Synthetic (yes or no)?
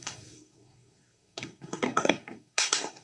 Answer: yes